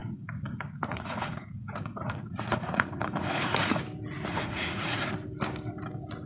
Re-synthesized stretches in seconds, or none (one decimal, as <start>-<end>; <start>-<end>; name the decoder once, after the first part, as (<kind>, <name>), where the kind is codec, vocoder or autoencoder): 0.0-3.8 (vocoder, Vocos); 4.3-5.1